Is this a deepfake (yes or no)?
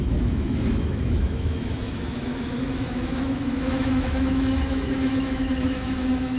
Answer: yes